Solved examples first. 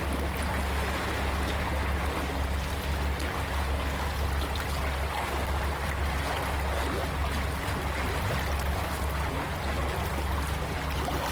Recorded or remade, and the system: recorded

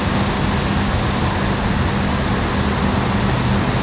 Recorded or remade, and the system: recorded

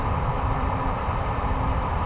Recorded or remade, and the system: remade, vocoder, BigVGAN v2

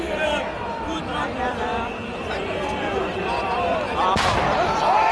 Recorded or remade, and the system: remade, vocoder, BigVGAN v2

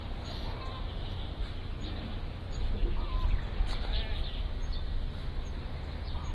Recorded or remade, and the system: recorded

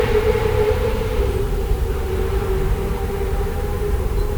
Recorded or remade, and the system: remade, vocoder, BigVGAN v2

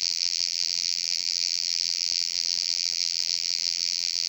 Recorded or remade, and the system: remade, vocoder, BigVGAN v2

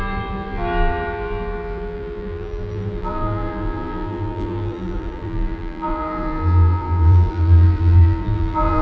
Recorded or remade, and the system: remade, vocoder, BigVGAN v2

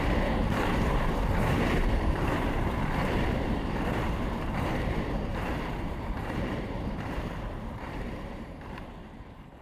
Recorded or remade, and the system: remade, vocoder, BigVGAN v2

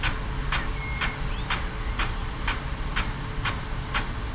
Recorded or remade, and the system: recorded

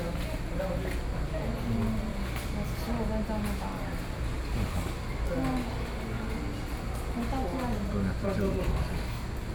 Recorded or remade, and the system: recorded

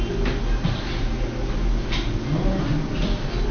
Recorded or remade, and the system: recorded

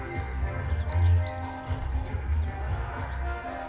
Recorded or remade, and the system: recorded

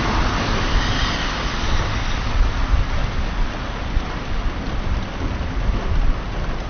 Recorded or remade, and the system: remade, vocoder, BigVGAN v2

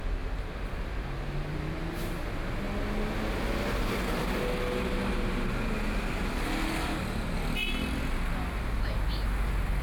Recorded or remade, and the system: recorded